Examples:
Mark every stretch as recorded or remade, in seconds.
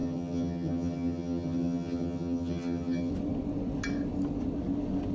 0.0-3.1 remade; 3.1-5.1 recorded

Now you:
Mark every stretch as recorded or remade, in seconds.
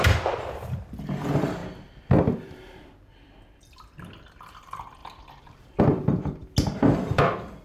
0.0-1.6 remade; 1.6-2.2 recorded; 2.2-5.0 remade; 5.0-5.8 recorded; 5.8-6.4 remade; 6.4-7.0 recorded; 7.0-7.6 remade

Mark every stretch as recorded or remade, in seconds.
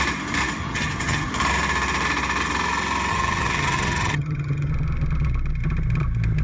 0.0-0.6 recorded; 0.6-1.3 remade; 1.3-3.1 recorded; 3.1-4.7 remade; 4.7-6.4 recorded